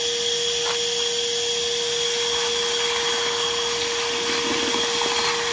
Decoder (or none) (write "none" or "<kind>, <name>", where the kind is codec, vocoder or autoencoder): none